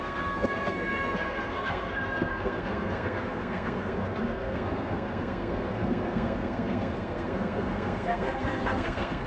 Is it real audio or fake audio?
fake